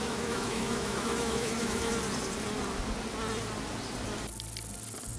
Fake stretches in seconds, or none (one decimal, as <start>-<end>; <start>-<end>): 0.0-1.9

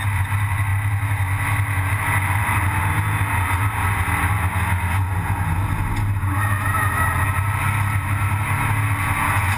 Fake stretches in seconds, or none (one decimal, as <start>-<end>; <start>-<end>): none

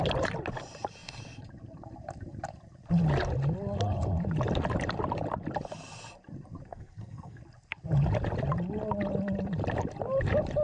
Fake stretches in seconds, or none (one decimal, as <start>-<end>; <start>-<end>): 6.7-7.4

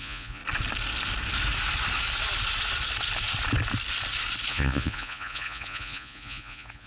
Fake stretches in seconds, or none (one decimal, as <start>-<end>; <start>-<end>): 0.0-0.4; 4.5-6.9

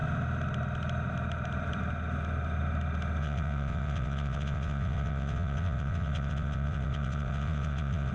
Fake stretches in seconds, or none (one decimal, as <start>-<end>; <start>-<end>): 3.2-8.1

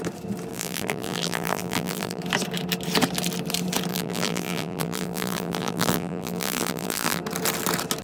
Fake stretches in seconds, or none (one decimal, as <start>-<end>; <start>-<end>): 0.5-2.2; 3.9-7.2